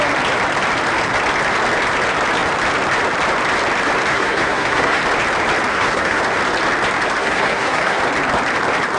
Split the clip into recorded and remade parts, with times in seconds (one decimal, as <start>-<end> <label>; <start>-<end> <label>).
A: 0.0-4.1 recorded; 4.1-5.0 remade; 5.0-5.7 recorded; 5.7-6.2 remade; 6.2-7.2 recorded; 7.2-8.0 remade; 8.0-9.0 recorded